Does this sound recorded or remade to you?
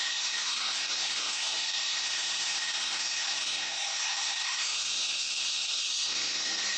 remade